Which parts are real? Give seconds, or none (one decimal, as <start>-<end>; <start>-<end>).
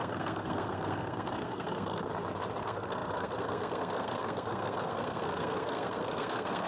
2.1-2.6